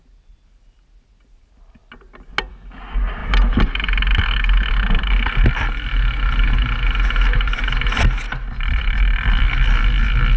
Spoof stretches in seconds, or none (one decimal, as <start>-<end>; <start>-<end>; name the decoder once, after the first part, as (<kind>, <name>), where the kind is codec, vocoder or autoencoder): none